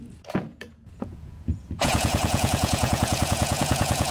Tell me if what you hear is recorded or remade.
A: remade